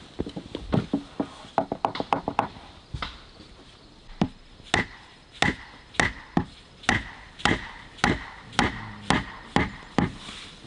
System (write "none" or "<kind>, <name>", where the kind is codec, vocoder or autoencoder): none